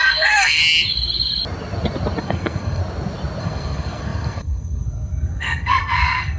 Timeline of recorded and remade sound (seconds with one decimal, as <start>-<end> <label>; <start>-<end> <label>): 0.0-0.6 remade; 0.6-2.2 recorded; 2.2-2.8 remade; 2.8-3.4 recorded; 3.4-6.4 remade